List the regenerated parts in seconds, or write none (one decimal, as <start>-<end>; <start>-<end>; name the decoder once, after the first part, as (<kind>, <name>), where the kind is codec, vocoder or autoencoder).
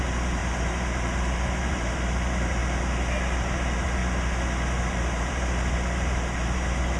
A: 0.0-2.6 (vocoder, BigVGAN v2); 3.4-4.0; 4.8-7.0